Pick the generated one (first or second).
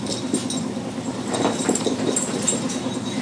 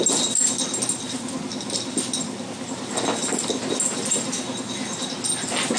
first